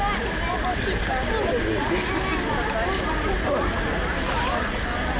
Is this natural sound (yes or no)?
yes